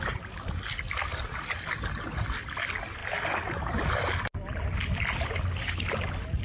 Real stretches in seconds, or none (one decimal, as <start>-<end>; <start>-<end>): 0.0-6.4